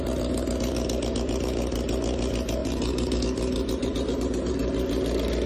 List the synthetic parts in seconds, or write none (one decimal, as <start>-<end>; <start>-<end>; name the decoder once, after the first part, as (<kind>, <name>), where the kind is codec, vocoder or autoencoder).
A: 2.6-3.2 (vocoder, BigVGAN v2); 3.8-4.5